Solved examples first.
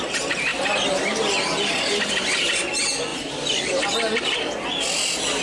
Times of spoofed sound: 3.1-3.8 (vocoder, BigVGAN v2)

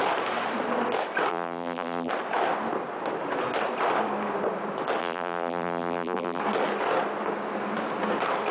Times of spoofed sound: 1.3-2.1 (vocoder, BigVGAN v2); 5.0-6.4

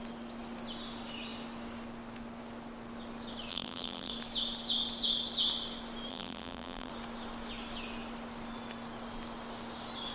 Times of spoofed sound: 3.5-4.1 (vocoder, BigVGAN v2); 6.1-6.9

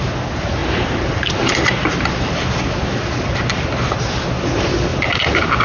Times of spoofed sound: 0.6-2.3 (vocoder, BigVGAN v2); 4.9-5.6

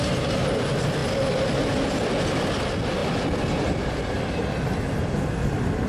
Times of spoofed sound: none

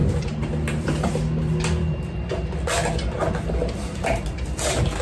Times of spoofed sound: 0.0-1.1 (vocoder, BigVGAN v2)

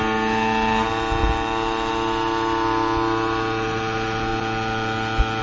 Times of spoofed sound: none

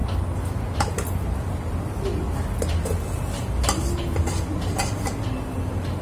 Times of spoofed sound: none